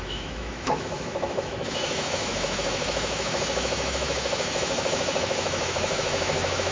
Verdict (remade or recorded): remade